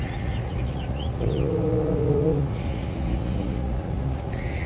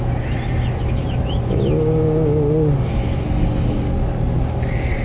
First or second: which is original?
second